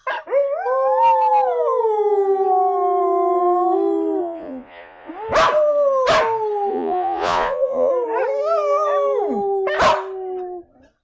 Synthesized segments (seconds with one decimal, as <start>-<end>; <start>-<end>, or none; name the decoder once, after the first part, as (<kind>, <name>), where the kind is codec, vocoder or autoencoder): 4.2-5.1 (vocoder, Vocos); 6.7-7.9